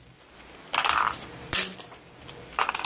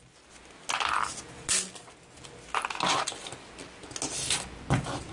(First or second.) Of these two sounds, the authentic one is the second